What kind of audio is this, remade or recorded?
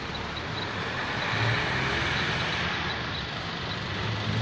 recorded